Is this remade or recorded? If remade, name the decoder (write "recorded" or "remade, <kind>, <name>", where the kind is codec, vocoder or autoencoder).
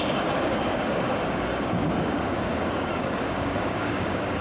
remade, codec, DAC